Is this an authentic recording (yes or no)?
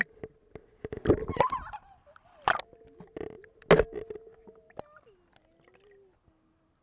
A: yes